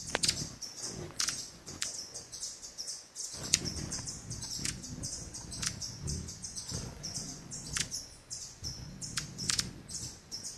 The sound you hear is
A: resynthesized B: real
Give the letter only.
A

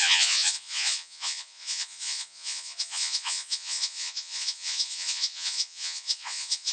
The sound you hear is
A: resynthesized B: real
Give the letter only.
A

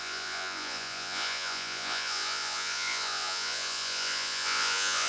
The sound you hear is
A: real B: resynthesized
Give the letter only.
B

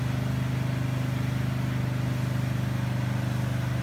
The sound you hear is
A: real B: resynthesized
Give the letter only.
A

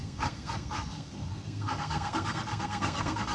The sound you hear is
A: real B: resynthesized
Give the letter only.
B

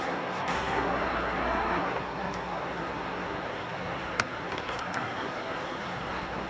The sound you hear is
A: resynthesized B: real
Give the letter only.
A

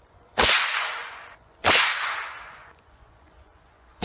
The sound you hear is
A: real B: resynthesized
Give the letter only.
B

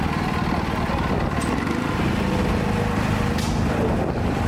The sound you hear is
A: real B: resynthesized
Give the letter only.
A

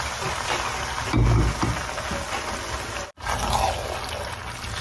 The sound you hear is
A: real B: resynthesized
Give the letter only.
A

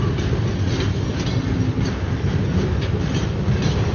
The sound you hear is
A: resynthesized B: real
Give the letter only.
B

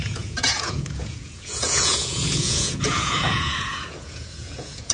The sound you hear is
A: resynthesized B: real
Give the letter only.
A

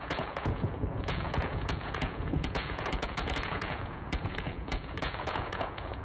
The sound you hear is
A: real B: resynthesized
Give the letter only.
B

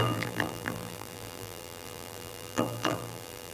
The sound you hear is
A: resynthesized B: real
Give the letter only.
A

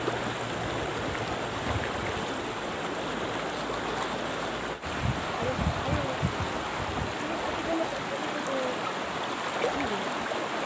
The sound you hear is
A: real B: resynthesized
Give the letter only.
A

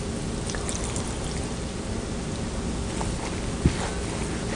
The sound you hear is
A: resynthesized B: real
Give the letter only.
B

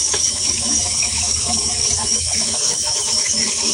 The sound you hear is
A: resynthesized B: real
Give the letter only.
A